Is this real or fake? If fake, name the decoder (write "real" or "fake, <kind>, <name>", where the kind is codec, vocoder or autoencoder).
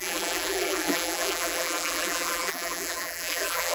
fake, vocoder, BigVGAN v2